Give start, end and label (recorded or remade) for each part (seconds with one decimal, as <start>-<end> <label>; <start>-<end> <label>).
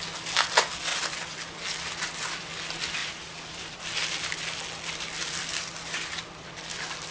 0.0-3.0 recorded; 3.0-3.8 remade; 3.8-7.1 recorded